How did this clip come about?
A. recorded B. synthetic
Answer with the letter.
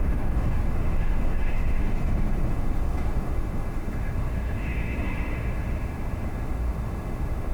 B